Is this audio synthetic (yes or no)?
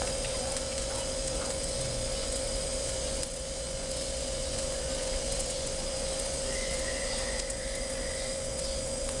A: yes